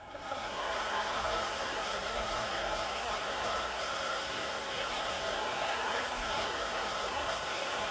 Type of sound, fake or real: fake